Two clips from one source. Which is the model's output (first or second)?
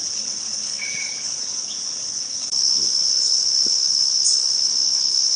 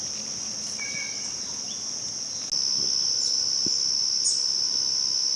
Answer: first